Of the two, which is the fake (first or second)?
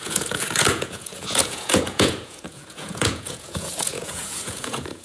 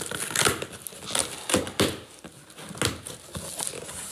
first